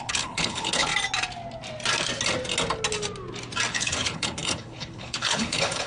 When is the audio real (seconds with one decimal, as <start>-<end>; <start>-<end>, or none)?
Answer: 0.9-3.7